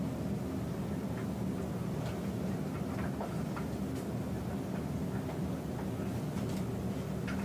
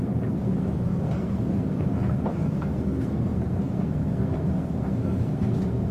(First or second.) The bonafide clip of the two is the first